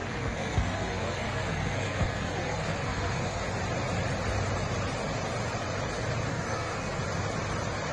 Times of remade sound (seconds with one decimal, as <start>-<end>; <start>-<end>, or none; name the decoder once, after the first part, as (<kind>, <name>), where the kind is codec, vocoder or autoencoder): 0.0-3.4 (codec, SNAC); 6.3-7.0